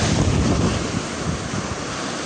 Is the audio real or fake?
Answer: real